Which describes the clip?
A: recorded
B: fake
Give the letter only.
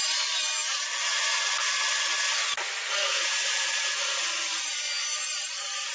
A